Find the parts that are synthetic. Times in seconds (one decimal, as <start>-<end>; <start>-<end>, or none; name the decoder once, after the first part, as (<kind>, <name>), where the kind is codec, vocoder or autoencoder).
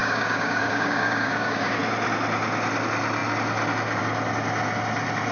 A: 0.0-1.8 (codec, DAC)